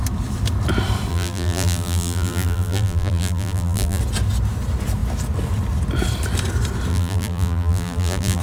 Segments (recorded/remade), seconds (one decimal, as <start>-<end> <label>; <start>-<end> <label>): 0.0-1.1 recorded; 1.1-4.0 remade; 4.0-6.9 recorded; 6.9-8.4 remade